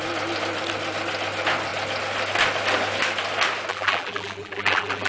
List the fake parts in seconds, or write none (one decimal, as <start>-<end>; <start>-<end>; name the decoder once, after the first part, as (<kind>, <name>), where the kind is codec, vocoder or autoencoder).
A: 3.7-5.1 (vocoder, BigVGAN v2)